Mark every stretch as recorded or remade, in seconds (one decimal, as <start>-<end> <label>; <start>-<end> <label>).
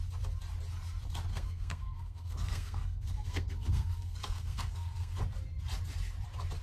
0.0-1.3 recorded; 1.3-5.2 remade; 5.2-6.6 recorded